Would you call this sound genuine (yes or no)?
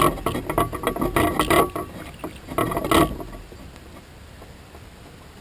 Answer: yes